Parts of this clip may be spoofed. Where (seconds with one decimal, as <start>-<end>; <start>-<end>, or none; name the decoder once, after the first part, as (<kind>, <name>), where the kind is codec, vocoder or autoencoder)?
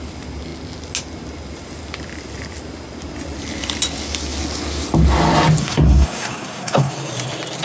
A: 5.6-6.9 (codec, SNAC)